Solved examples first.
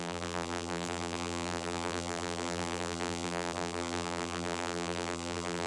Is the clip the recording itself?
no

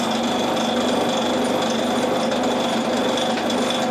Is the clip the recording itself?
yes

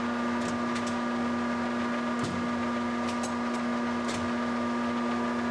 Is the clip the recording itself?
yes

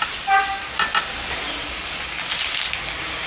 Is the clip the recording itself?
yes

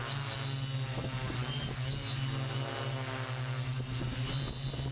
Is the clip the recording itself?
yes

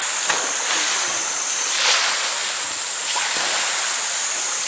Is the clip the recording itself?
no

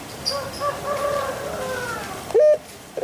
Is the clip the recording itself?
yes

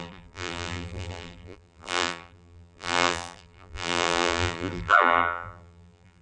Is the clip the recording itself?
no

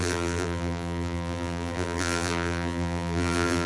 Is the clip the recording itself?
no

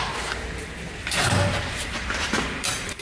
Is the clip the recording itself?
no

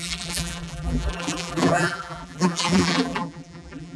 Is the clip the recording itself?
no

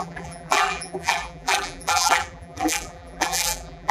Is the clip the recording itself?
no